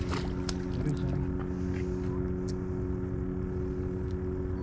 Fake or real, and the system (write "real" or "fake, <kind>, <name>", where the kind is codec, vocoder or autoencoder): real